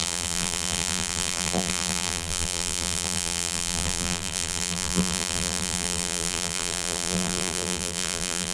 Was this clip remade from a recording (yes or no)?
yes